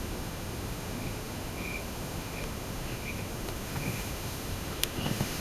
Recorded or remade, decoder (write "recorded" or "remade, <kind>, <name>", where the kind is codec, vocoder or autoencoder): remade, autoencoder, DAC-VAE